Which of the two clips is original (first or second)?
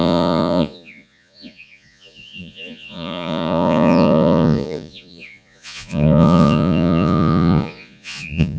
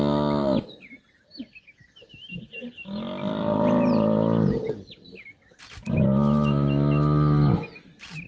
second